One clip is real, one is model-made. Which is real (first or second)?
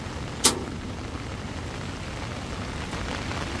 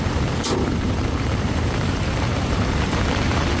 first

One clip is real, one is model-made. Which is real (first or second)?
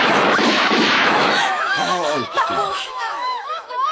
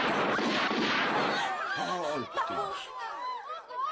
second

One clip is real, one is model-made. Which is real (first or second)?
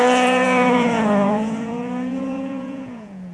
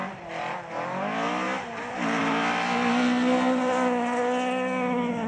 second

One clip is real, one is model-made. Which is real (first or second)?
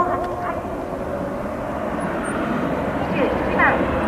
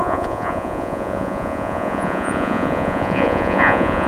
first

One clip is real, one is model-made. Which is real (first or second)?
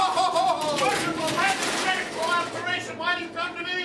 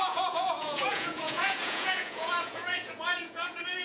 first